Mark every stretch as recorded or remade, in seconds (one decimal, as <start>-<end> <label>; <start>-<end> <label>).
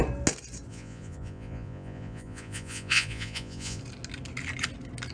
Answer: 0.0-0.7 recorded; 0.7-3.8 remade; 3.8-5.1 recorded